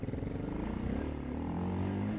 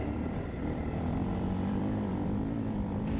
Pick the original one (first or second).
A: first